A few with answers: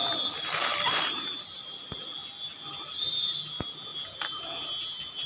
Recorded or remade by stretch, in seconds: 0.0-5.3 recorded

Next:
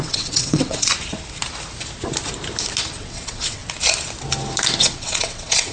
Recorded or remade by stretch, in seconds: 0.0-0.9 remade; 0.9-3.0 recorded; 3.0-3.6 remade; 3.6-4.8 recorded; 4.8-5.7 remade

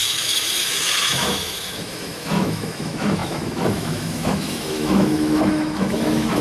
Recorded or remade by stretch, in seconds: 0.0-6.4 remade

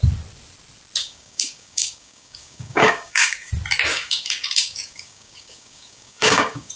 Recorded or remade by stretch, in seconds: 0.0-1.0 recorded; 1.0-3.5 remade; 3.5-3.9 recorded; 3.9-6.8 remade

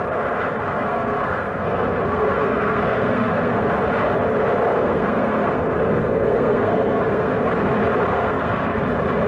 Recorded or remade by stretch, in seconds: 0.0-0.7 recorded; 0.7-3.7 remade; 3.7-4.7 recorded; 4.7-7.4 remade; 7.4-8.1 recorded; 8.1-8.8 remade; 8.8-9.3 recorded

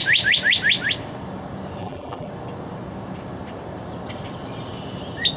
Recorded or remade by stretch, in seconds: 0.0-1.8 recorded; 1.8-2.3 remade; 2.3-5.4 recorded